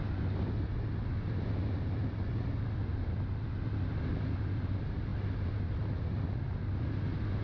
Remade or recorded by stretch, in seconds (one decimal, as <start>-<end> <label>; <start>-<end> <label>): 0.0-7.4 recorded